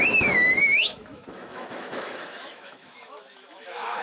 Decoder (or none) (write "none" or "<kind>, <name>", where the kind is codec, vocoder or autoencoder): autoencoder, DAC-VAE